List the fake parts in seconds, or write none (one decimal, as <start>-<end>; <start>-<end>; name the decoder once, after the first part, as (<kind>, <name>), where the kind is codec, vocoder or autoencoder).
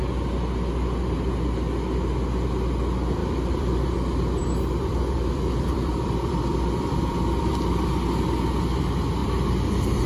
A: 3.2-3.9 (vocoder, BigVGAN v2); 4.4-7.5; 9.2-10.1